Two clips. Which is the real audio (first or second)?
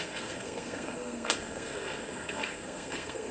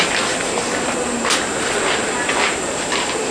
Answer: second